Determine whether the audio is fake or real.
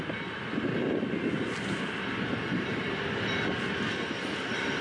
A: real